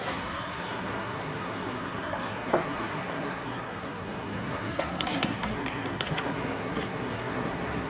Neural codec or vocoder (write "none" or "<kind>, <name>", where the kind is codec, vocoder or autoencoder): codec, SNAC